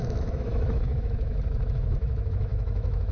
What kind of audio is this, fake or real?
fake